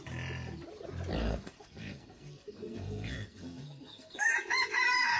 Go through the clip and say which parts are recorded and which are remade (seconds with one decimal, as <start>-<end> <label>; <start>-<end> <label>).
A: 0.0-1.2 recorded; 1.2-4.3 remade; 4.3-5.2 recorded